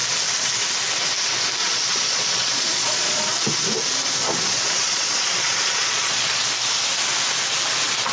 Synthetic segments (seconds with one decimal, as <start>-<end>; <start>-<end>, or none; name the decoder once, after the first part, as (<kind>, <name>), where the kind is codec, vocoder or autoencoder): 1.6-3.2 (vocoder, Vocos); 4.2-6.5